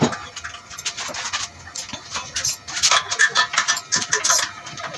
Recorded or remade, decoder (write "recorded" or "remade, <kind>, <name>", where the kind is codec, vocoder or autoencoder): recorded